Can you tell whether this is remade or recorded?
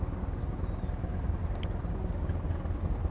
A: recorded